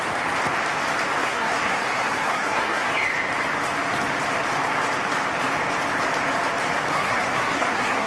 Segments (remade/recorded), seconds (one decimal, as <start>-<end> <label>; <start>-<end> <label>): 0.0-1.2 recorded; 1.2-2.9 remade; 2.9-6.9 recorded; 6.9-8.1 remade